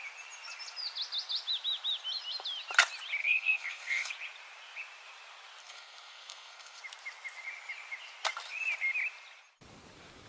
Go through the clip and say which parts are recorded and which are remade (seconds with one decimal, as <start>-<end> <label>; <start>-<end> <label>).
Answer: 0.0-3.2 recorded; 3.2-4.1 remade; 4.1-5.6 recorded; 5.6-6.8 remade; 6.8-10.3 recorded